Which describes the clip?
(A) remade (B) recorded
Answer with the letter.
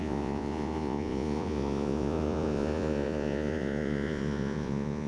A